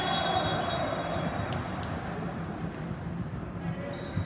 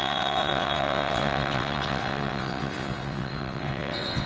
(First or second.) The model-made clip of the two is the second